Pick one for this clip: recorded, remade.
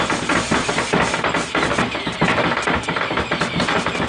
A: recorded